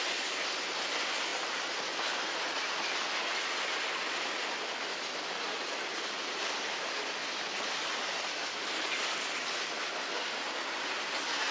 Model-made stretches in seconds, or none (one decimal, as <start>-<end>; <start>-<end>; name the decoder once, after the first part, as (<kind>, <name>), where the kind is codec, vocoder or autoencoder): none